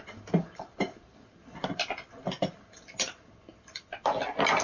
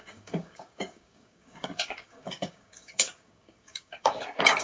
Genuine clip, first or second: first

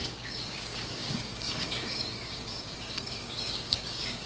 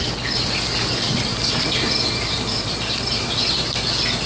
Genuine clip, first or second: second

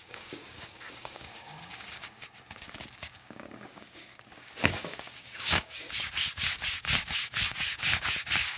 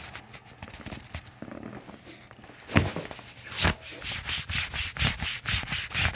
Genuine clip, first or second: second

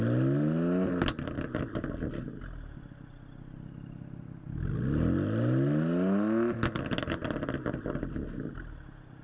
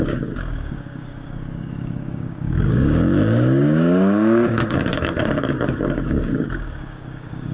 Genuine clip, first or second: first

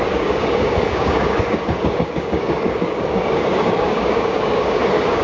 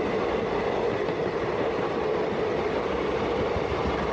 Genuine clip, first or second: second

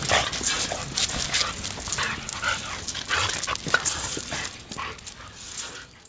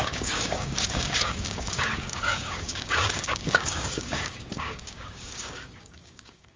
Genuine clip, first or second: first